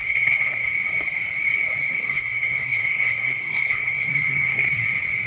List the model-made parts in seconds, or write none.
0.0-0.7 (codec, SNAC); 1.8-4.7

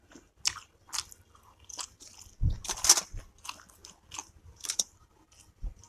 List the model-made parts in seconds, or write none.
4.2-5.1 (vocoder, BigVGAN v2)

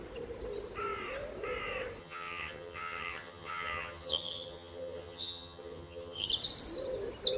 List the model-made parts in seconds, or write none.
2.0-6.3 (vocoder, HiFi-GAN)

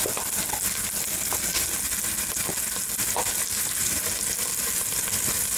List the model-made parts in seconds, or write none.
none

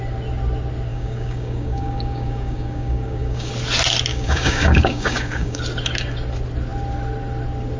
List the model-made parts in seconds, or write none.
0.9-3.5 (codec, DAC); 4.1-5.6